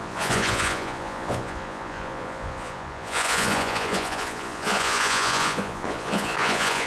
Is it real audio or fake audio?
fake